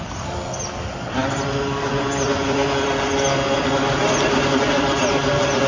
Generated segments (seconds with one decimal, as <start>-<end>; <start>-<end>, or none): none